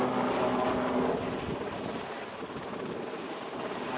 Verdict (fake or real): real